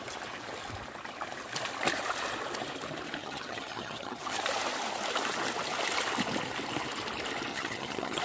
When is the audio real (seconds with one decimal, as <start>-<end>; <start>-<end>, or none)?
0.0-3.2; 4.4-7.5